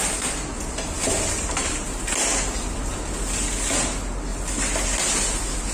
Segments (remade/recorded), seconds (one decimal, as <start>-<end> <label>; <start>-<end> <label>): 0.0-5.7 recorded

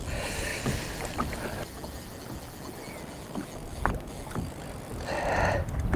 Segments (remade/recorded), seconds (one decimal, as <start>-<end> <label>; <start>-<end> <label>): 0.0-6.0 recorded

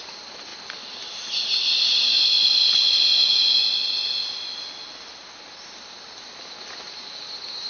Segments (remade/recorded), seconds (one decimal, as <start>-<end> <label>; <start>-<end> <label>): 0.0-7.7 recorded

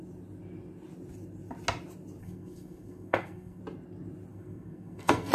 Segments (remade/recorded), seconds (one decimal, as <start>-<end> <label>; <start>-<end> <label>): 0.0-2.2 recorded; 2.2-3.6 remade; 3.6-4.3 recorded; 4.3-5.3 remade

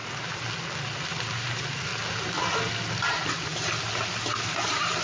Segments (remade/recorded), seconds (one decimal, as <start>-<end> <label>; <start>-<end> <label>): 0.0-1.2 recorded; 1.2-1.9 remade; 1.9-3.1 recorded; 3.1-3.5 remade; 3.5-4.2 recorded; 4.2-5.0 remade

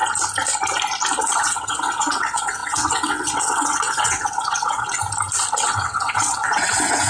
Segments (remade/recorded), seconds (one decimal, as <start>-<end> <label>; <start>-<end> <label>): 0.0-1.2 recorded; 1.2-5.0 remade; 5.0-5.6 recorded; 5.6-7.1 remade

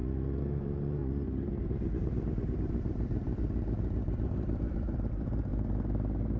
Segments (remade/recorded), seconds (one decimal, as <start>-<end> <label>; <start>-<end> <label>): 0.0-0.6 recorded; 0.6-1.0 remade; 1.0-1.6 recorded; 1.6-5.5 remade; 5.5-6.4 recorded